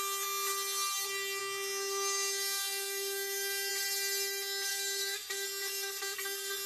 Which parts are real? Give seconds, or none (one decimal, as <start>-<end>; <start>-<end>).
0.0-1.4; 3.7-4.7